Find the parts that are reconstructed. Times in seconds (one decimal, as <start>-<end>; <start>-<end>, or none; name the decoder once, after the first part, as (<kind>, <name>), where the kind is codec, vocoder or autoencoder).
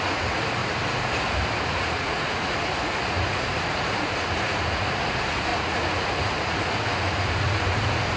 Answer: 0.0-0.6 (vocoder, Vocos); 1.7-8.2